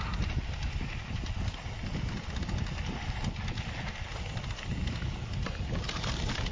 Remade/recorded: recorded